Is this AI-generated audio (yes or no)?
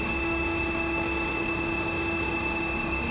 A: yes